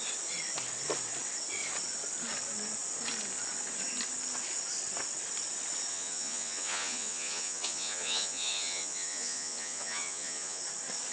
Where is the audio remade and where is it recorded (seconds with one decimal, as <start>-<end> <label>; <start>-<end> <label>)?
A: 0.0-5.9 recorded; 5.9-10.6 remade; 10.6-11.1 recorded